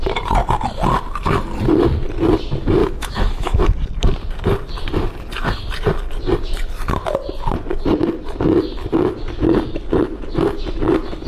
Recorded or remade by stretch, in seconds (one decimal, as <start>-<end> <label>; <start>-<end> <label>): 0.0-2.8 recorded; 2.8-3.6 remade; 3.6-11.3 recorded